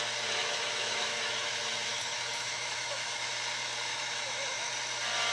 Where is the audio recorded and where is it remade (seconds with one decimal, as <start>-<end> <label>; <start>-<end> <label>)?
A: 0.0-0.4 recorded; 0.4-3.3 remade; 3.3-3.9 recorded; 3.9-4.7 remade; 4.7-5.3 recorded